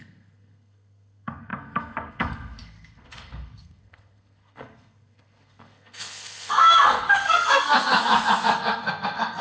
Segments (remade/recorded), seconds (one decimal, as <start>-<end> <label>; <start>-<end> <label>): 0.0-9.4 remade